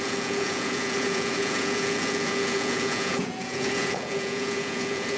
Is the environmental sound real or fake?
fake